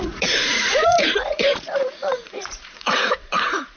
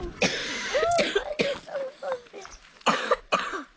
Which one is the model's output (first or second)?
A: first